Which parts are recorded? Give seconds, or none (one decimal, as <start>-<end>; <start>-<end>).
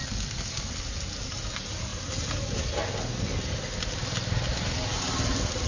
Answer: 0.0-5.7